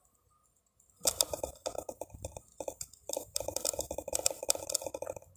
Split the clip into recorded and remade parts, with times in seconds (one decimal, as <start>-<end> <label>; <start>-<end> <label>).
0.0-1.9 recorded; 1.9-4.4 remade; 4.4-5.0 recorded; 5.0-5.4 remade